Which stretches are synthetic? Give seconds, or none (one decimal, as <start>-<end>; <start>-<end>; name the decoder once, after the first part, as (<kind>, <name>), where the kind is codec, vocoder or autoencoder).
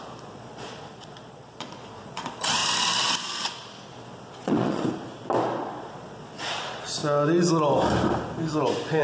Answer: 0.0-2.6 (vocoder, Vocos); 4.3-4.8; 5.6-7.0